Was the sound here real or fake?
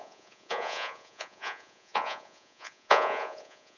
fake